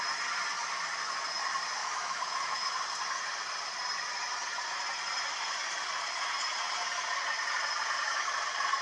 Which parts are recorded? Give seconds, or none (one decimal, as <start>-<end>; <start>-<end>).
0.0-1.8; 2.7-8.8

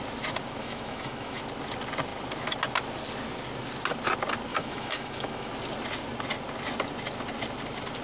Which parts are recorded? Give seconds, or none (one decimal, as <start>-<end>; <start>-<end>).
0.0-0.6; 1.4-4.5; 5.5-8.0

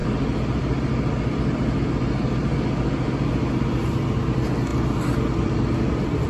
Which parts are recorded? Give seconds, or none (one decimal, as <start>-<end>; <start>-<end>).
0.0-6.3

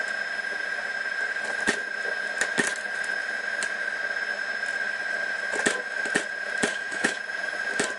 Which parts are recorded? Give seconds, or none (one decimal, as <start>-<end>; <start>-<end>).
0.0-6.7; 7.2-8.0

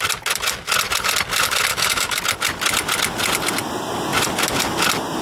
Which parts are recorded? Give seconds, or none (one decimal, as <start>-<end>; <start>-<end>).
0.0-1.7; 2.2-5.2